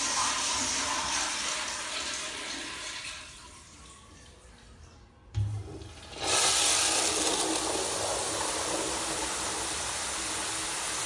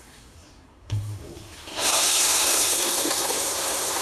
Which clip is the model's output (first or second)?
second